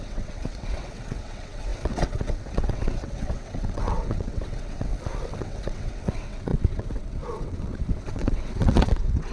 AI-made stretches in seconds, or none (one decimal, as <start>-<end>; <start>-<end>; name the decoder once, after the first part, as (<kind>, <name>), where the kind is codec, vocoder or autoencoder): 0.0-4.9 (vocoder, WaveNeXt); 5.4-9.3